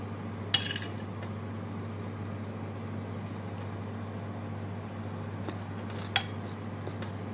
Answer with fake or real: real